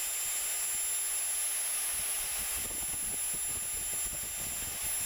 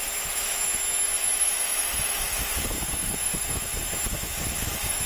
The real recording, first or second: first